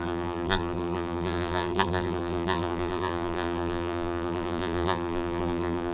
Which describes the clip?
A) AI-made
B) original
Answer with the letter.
A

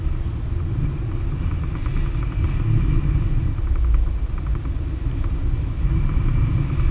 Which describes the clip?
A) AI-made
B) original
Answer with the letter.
B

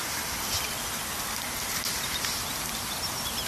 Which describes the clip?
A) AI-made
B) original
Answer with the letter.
B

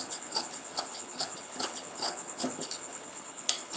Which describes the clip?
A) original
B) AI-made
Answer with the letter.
B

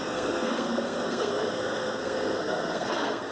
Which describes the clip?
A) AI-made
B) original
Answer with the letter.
A